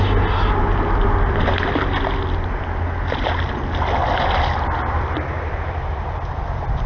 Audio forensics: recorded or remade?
recorded